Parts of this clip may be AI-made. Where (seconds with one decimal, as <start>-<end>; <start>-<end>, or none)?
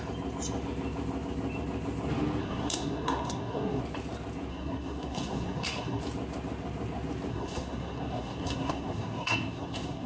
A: 2.4-3.8; 4.5-6.0; 7.3-10.1